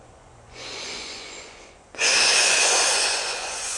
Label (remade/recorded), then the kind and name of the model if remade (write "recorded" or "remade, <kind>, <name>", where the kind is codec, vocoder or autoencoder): remade, vocoder, Vocos